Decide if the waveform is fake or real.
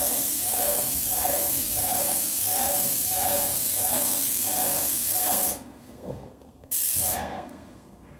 fake